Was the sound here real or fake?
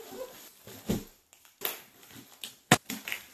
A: real